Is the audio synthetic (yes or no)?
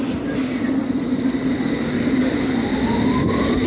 no